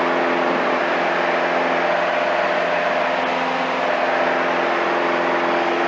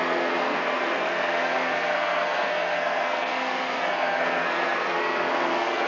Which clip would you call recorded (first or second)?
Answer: first